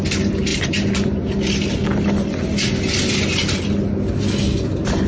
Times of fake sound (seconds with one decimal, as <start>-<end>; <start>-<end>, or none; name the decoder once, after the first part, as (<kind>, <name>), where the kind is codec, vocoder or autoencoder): none